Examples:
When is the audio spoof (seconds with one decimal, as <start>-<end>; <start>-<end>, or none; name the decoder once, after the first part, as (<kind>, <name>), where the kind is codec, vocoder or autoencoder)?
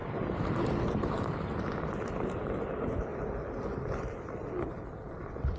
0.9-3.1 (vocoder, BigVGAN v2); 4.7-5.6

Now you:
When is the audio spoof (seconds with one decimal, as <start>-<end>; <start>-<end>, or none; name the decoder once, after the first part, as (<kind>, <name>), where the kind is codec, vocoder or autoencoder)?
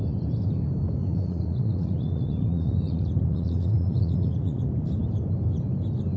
1.0-4.7 (vocoder, Vocos)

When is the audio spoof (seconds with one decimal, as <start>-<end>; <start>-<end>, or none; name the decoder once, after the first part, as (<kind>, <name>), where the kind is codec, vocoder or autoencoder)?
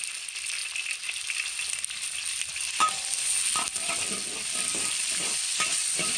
none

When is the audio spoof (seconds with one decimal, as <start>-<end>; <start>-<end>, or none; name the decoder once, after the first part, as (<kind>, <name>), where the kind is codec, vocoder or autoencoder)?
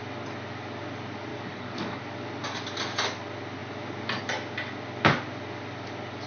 1.3-2.0 (codec, DAC)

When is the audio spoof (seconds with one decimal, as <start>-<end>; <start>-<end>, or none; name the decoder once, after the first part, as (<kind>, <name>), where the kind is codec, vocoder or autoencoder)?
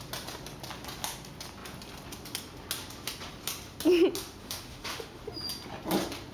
4.4-5.2 (autoencoder, DAC-VAE)